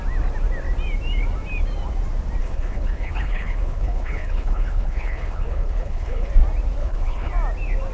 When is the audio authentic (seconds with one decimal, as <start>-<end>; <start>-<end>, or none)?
0.0-2.4; 6.3-6.8; 7.3-7.9